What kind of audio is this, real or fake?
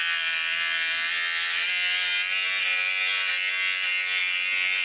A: real